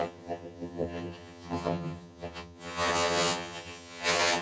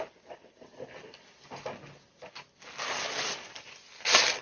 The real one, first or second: second